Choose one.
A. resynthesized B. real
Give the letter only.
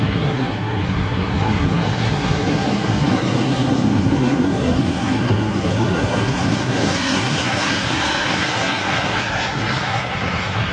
A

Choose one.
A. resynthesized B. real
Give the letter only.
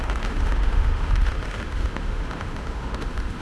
A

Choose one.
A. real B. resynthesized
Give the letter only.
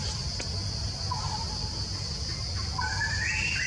A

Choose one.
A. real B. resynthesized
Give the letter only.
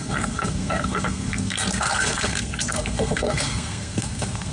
B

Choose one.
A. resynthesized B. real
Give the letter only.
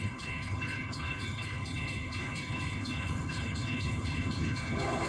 A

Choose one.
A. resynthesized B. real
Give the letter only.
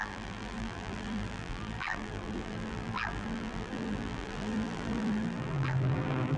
A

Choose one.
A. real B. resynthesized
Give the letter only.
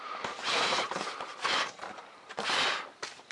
B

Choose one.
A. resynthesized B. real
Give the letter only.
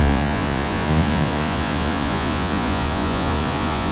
A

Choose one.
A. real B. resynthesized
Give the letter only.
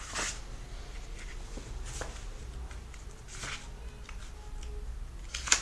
A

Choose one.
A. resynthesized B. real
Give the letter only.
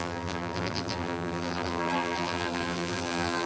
A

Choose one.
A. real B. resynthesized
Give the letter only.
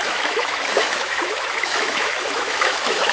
B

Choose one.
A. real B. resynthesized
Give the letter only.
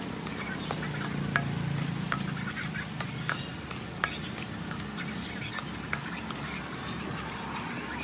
A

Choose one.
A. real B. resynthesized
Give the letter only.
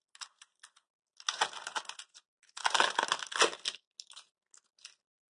A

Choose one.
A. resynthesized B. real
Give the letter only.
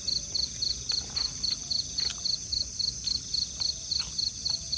B